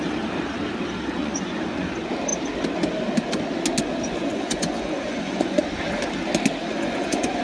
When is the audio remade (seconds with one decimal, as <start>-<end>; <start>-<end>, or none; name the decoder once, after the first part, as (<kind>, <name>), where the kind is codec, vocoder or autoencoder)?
1.2-1.9 (vocoder, Vocos); 4.3-5.6; 6.6-7.4